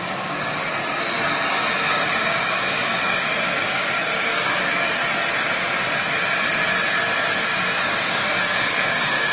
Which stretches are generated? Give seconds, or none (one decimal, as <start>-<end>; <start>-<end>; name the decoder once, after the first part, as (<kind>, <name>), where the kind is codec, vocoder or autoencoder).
0.0-0.6 (codec, DAC); 1.9-5.0; 7.8-9.3